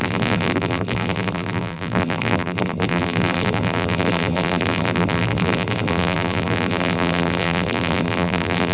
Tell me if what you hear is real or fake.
fake